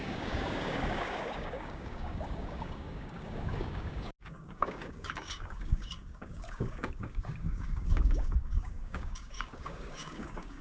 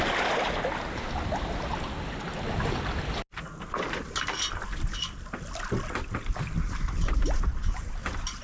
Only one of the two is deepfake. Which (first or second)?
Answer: first